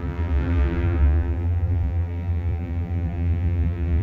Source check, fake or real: fake